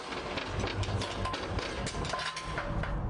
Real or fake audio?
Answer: real